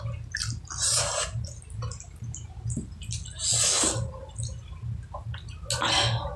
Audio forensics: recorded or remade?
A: recorded